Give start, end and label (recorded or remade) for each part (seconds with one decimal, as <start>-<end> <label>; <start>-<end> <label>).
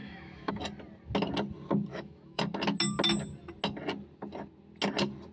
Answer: 0.0-0.5 remade; 0.5-1.9 recorded; 1.9-2.4 remade; 2.4-5.3 recorded